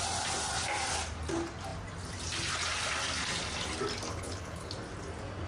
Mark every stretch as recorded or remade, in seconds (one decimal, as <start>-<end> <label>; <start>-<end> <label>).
0.0-4.1 recorded; 4.1-4.7 remade; 4.7-5.5 recorded